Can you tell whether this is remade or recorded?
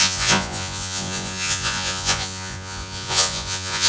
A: remade